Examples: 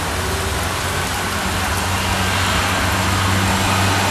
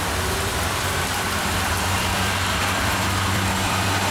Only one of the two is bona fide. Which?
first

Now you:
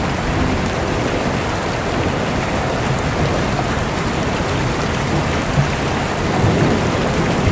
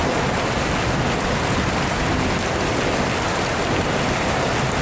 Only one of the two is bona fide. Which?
second